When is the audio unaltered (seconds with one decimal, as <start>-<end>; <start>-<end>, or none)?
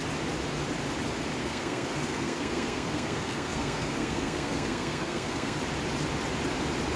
0.0-1.4; 5.6-7.0